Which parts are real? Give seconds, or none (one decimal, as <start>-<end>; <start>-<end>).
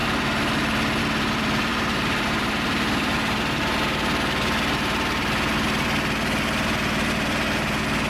0.0-1.7; 3.4-8.1